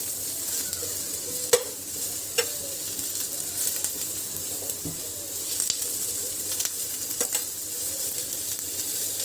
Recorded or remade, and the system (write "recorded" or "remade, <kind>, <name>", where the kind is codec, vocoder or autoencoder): remade, vocoder, BigVGAN v2